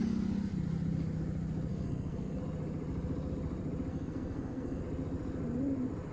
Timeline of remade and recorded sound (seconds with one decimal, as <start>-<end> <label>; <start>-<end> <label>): 0.0-1.7 recorded; 1.7-2.4 remade; 2.4-3.9 recorded; 3.9-4.8 remade; 4.8-6.1 recorded